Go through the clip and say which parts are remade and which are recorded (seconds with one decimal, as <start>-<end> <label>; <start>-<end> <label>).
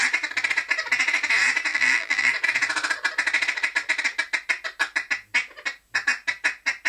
0.0-1.7 recorded; 1.7-2.3 remade; 2.3-6.9 recorded